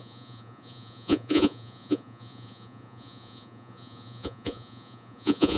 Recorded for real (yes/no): no